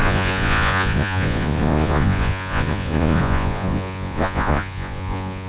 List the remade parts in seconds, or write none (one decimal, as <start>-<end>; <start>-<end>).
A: 0.0-5.5